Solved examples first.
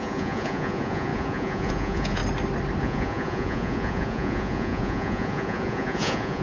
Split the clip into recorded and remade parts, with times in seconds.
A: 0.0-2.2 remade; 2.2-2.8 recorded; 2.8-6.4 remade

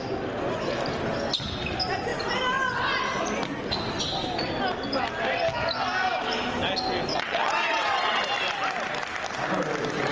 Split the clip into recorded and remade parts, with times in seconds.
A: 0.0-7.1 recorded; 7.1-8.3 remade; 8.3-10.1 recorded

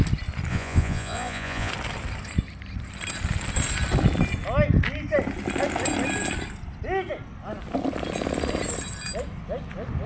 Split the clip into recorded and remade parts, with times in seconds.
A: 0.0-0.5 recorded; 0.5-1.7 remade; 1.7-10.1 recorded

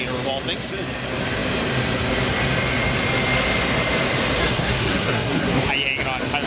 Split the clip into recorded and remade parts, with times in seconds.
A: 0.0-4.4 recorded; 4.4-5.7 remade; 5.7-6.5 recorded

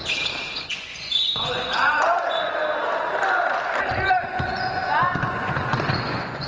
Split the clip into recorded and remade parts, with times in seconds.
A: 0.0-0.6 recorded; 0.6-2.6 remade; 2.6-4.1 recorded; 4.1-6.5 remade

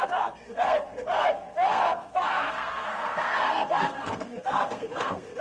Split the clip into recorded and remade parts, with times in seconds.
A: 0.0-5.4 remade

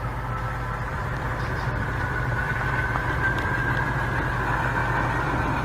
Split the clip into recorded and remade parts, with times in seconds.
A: 0.0-0.9 recorded; 0.9-4.3 remade; 4.3-5.6 recorded